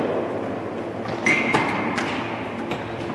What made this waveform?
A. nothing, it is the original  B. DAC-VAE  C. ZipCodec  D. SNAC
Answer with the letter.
A